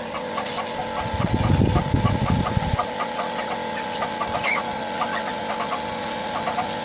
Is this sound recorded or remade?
recorded